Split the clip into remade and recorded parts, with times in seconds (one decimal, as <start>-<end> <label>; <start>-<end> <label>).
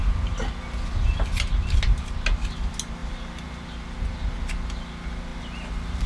0.0-3.0 recorded; 3.0-3.7 remade; 3.7-6.1 recorded